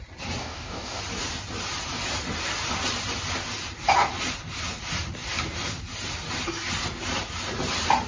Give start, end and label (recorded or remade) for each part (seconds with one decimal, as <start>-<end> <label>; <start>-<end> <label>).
0.0-0.4 recorded; 0.4-1.0 remade; 1.0-8.1 recorded